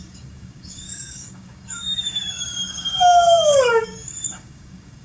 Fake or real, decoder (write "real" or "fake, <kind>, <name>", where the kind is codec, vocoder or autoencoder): fake, codec, DAC